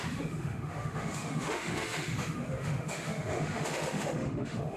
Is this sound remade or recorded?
remade